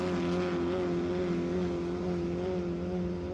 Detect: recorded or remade recorded